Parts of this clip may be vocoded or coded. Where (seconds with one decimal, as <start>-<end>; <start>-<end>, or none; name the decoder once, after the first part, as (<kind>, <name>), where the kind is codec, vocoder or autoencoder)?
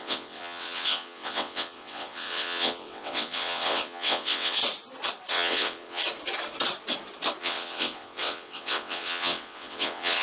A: 0.0-4.6 (vocoder, WaveNeXt); 5.3-6.0; 7.4-10.2